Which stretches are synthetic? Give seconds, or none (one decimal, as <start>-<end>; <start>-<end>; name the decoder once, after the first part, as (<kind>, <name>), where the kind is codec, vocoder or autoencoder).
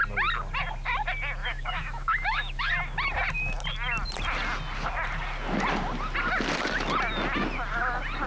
1.4-2.7 (autoencoder, DAC-VAE)